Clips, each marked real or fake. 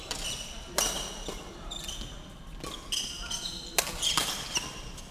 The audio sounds real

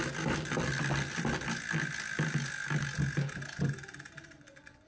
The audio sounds real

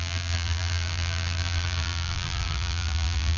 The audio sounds fake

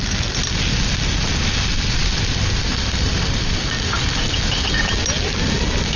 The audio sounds real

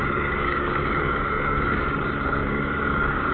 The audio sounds fake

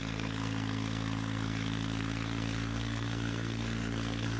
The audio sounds fake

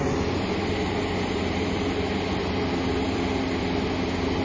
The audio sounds real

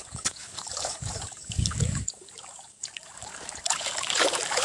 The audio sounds fake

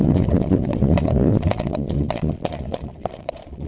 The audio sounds fake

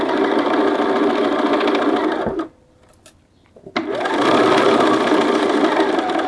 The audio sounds real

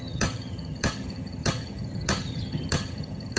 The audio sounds fake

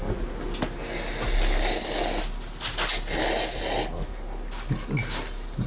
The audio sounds real